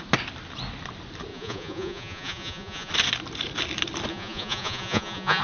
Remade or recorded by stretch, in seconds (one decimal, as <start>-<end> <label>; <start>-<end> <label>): 0.0-1.3 recorded; 1.3-2.9 remade; 2.9-4.1 recorded; 4.1-5.4 remade